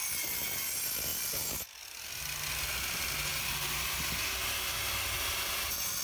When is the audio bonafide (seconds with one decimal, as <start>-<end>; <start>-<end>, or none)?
0.0-3.3